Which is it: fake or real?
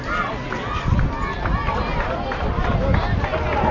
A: real